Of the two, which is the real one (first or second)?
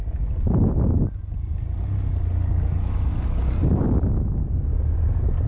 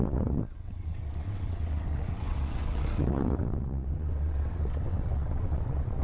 first